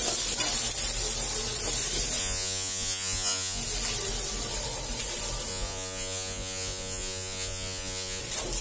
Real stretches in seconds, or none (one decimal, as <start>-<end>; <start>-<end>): 0.0-2.2; 3.6-5.5; 8.2-8.6